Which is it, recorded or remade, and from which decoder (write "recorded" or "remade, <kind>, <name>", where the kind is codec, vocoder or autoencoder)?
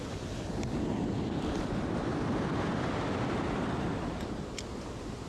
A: recorded